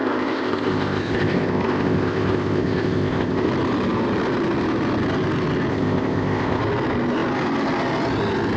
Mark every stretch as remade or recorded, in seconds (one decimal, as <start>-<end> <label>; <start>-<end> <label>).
0.0-3.5 remade; 3.5-5.7 recorded; 5.7-6.6 remade; 6.6-8.6 recorded